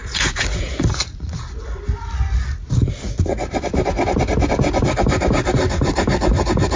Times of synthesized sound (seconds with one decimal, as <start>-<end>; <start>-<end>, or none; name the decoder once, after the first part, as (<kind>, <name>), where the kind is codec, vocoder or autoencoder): 0.0-1.4 (vocoder, Vocos)